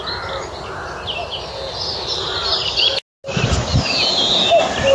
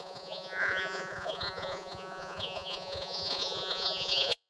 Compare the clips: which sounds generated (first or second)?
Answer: second